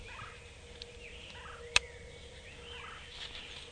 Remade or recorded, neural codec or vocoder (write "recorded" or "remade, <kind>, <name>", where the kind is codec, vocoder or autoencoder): recorded